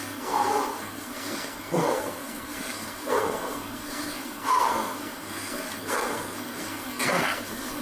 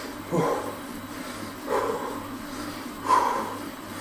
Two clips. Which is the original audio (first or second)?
second